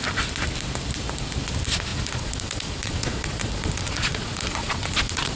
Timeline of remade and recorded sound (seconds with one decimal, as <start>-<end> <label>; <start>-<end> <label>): 0.0-1.9 recorded; 1.9-5.4 remade